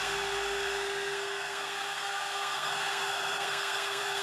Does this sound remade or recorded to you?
remade